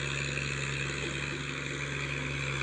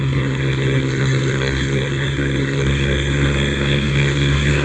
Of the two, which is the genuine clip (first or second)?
first